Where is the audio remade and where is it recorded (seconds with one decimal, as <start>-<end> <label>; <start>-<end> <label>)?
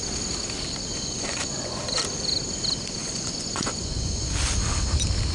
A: 0.0-0.9 recorded; 0.9-1.8 remade; 1.8-3.0 recorded; 3.0-4.3 remade; 4.3-5.3 recorded